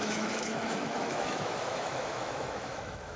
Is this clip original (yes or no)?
no